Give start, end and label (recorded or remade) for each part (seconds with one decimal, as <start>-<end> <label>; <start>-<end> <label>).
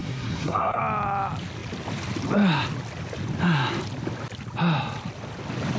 0.0-0.8 remade; 0.8-5.8 recorded